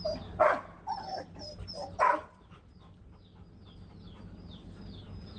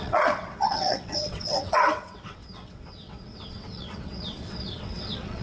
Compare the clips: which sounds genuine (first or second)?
first